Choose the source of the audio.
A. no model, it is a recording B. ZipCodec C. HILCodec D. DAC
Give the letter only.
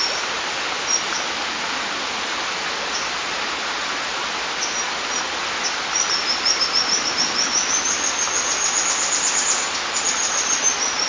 A